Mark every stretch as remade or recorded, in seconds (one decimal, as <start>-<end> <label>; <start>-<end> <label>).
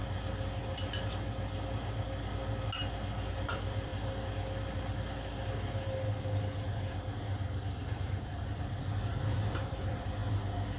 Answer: 0.0-3.3 recorded; 3.3-3.9 remade; 3.9-7.8 recorded; 7.8-10.2 remade; 10.2-10.8 recorded